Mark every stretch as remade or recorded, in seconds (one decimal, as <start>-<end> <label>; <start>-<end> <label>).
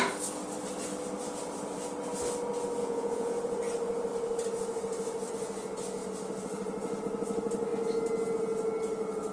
0.0-2.8 recorded; 2.8-3.3 remade; 3.3-9.3 recorded